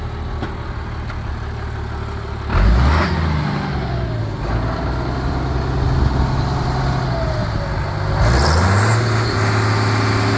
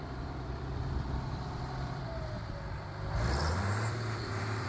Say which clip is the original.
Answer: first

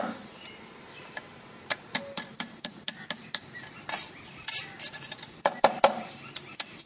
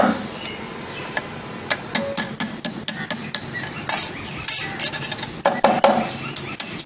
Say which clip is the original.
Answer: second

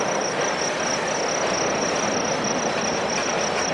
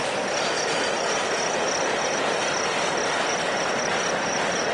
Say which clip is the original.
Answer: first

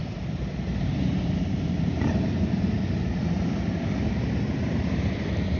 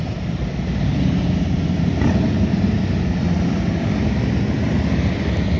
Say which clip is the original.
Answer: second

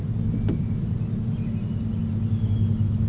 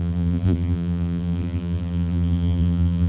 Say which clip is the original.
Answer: first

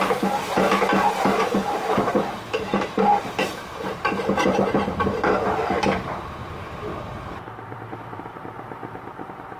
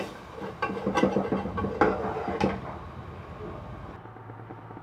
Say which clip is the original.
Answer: second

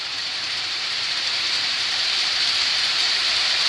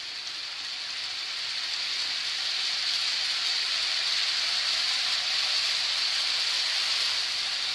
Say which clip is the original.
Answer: second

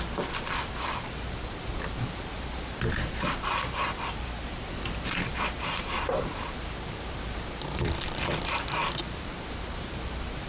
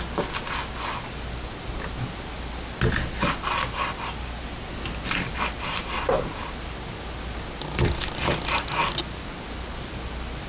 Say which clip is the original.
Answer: second